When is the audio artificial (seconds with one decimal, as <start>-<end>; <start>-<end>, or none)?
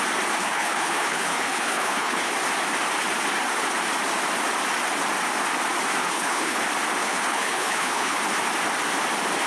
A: 0.4-2.3; 6.0-6.6; 7.0-8.2